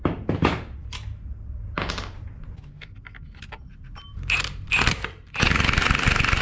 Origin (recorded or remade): recorded